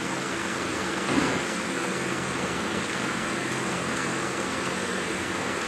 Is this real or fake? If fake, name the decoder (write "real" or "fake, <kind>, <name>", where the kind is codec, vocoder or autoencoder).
fake, codec, SNAC